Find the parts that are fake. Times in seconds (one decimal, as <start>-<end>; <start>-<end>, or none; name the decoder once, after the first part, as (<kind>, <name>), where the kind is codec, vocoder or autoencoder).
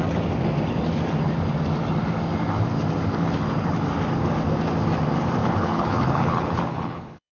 5.4-7.3 (codec, HILCodec)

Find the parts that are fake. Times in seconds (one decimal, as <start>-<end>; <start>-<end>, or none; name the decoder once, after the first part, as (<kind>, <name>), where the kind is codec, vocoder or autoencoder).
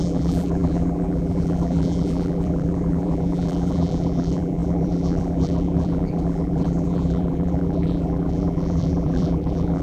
0.0-9.8 (vocoder, BigVGAN v2)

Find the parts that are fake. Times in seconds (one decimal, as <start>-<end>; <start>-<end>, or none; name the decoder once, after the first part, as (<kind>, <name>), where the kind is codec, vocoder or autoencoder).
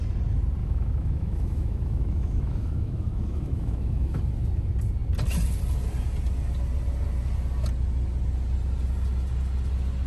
0.6-4.2 (autoencoder, DAC-VAE)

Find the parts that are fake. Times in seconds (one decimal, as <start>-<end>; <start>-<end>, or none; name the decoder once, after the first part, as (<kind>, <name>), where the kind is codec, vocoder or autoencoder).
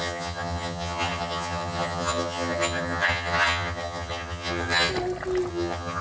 0.0-4.9 (vocoder, HiFi-GAN); 5.5-6.0